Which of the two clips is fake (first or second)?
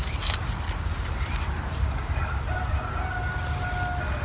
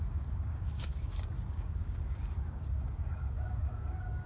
second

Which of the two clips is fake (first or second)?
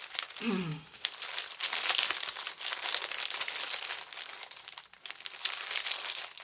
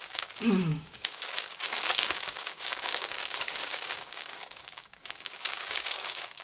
second